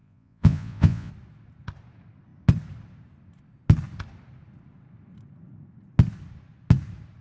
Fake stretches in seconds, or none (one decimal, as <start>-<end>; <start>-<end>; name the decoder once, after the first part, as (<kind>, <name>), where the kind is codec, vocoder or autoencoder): 0.0-1.1 (vocoder, Vocos)